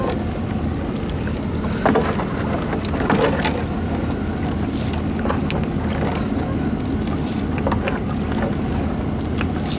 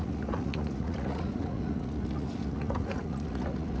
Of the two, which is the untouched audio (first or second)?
first